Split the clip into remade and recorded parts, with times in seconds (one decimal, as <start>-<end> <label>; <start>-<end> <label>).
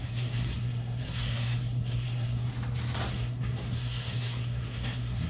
0.0-2.5 remade; 2.5-3.1 recorded; 3.1-5.3 remade